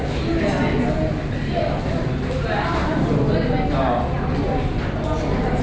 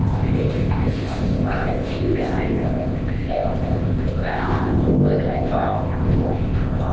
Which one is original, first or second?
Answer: first